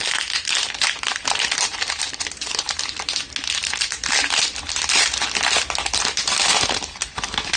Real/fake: real